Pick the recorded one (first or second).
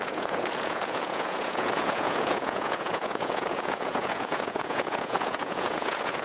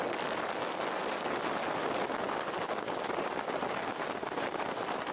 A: second